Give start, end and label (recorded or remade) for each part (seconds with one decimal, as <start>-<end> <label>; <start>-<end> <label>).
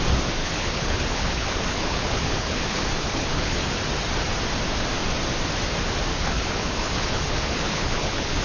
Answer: 0.0-0.4 recorded; 0.4-3.6 remade; 3.6-6.1 recorded; 6.1-8.4 remade